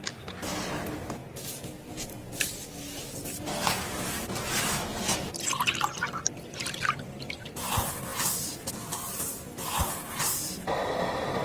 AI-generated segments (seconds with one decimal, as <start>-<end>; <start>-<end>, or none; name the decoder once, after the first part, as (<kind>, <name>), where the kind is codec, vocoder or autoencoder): none

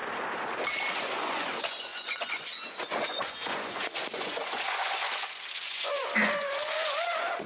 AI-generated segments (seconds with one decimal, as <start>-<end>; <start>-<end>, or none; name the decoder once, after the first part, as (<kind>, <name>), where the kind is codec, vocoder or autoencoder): 1.0-7.5 (vocoder, Vocos)

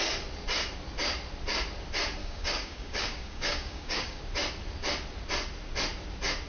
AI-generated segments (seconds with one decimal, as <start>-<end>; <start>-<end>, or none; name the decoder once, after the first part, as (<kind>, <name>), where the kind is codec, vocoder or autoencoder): 2.2-4.2 (codec, DAC)

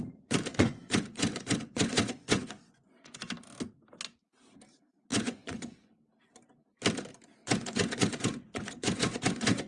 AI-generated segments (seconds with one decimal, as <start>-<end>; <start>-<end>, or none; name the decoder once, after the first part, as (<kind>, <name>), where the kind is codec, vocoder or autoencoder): 0.5-3.2 (vocoder, Vocos); 5.1-5.9; 7.4-9.7

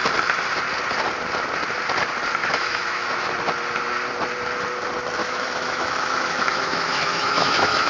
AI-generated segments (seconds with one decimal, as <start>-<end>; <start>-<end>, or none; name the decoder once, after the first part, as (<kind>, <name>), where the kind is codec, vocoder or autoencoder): 2.4-3.3 (autoencoder, DAC-VAE); 5.2-7.9

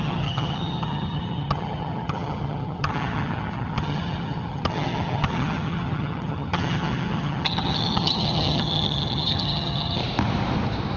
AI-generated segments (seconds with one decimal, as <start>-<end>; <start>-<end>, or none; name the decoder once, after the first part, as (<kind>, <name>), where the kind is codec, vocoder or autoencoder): 0.0-10.0 (vocoder, HiFi-GAN)

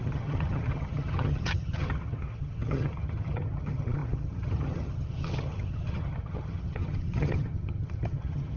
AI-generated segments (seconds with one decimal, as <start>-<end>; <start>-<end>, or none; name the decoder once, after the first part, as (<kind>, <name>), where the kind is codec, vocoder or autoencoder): 0.0-8.6 (vocoder, HiFi-GAN)